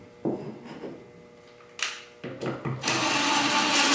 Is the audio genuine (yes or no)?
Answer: yes